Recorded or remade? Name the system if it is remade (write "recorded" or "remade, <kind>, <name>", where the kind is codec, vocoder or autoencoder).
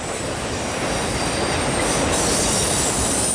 recorded